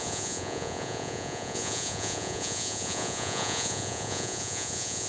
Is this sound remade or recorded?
remade